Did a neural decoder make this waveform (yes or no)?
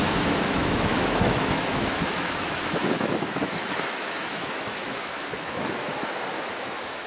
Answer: yes